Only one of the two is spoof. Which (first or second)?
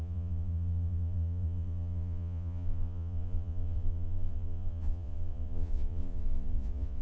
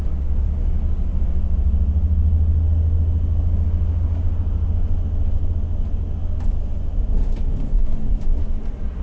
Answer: first